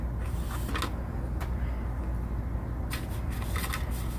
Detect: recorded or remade recorded